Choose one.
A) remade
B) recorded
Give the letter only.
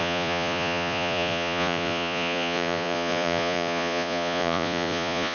A